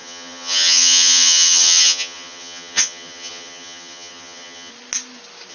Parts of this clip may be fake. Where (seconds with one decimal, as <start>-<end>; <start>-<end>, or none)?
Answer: 0.0-4.7